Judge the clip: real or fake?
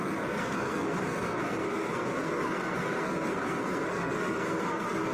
fake